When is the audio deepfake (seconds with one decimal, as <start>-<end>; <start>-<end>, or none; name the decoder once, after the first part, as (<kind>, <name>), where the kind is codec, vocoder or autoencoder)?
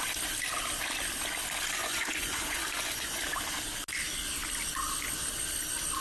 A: 1.8-3.2 (vocoder, Vocos)